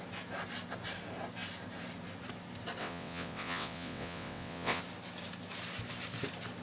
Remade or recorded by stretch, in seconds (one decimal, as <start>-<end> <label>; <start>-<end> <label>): 0.0-2.8 recorded; 2.8-4.8 remade; 4.8-6.6 recorded